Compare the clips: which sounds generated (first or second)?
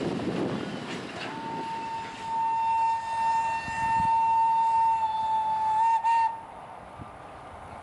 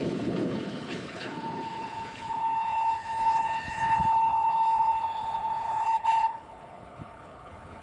second